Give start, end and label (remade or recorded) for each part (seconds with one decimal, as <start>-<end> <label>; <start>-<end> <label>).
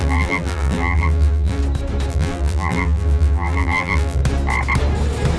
0.0-1.6 remade; 1.6-2.1 recorded; 2.1-4.2 remade; 4.2-5.4 recorded